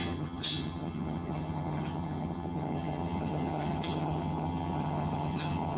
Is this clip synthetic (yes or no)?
yes